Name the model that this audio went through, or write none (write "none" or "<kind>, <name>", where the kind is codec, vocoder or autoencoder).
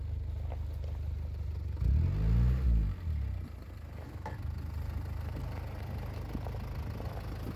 none